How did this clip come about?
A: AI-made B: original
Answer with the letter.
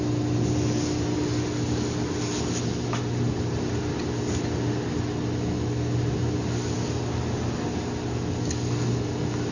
B